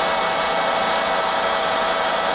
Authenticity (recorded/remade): recorded